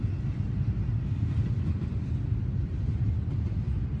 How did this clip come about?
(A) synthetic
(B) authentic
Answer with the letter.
B